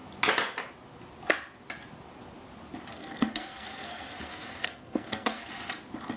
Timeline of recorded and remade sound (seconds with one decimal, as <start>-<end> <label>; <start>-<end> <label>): 0.0-2.9 recorded; 2.9-5.5 remade; 5.5-6.2 recorded